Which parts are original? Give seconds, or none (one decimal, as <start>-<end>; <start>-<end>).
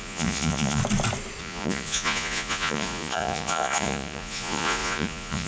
0.8-1.4